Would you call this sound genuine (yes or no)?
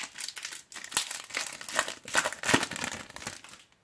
yes